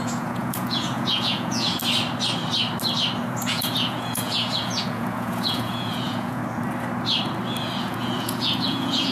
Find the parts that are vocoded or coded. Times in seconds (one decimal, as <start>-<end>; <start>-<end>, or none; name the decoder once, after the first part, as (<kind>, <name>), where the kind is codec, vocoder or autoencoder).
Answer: 0.0-1.8 (vocoder, Vocos); 3.2-6.4; 7.8-9.1